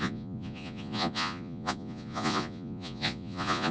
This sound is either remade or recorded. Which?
remade